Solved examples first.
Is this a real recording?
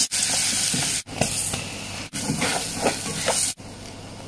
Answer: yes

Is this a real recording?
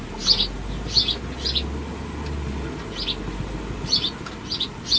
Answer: yes